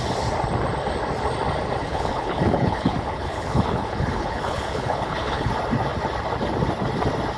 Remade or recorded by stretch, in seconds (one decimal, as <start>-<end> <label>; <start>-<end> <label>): 0.0-1.8 recorded; 1.8-5.5 remade; 5.5-7.4 recorded